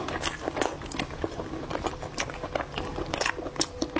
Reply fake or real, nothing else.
real